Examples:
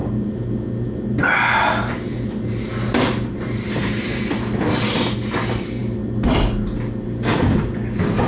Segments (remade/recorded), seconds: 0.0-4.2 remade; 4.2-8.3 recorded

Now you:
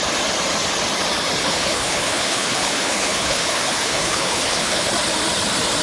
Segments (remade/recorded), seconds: 0.0-1.4 recorded; 1.4-4.9 remade; 4.9-5.8 recorded